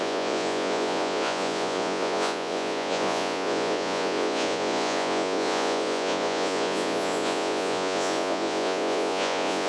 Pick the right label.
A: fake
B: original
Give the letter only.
A